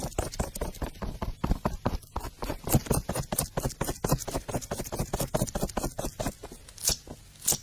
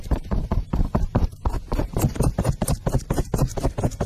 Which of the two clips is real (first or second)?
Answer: first